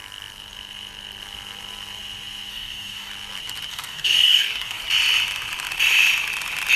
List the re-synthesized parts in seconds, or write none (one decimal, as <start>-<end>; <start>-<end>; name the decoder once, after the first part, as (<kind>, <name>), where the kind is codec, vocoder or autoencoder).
2.5-3.1 (codec, DAC); 3.7-4.8